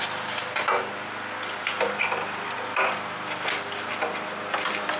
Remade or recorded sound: recorded